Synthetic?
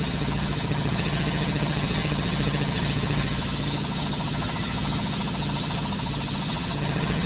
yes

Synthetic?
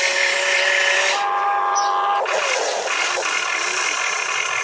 no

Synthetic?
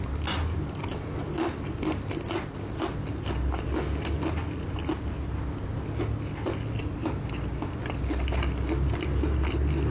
no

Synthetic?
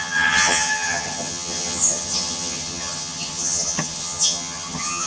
yes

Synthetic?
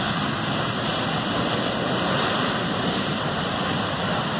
no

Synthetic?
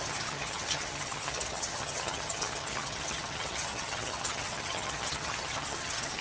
yes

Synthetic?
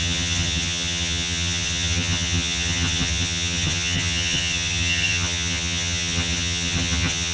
yes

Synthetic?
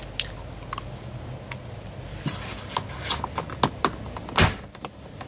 no